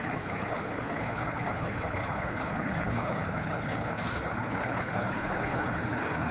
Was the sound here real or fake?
fake